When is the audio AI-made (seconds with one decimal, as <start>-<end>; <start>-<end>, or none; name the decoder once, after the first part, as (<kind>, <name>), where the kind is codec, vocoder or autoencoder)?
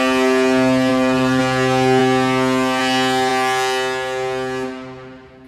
0.9-1.4 (vocoder, BigVGAN v2)